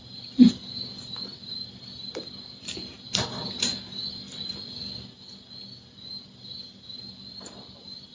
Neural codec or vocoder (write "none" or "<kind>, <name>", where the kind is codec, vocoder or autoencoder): vocoder, BigVGAN v2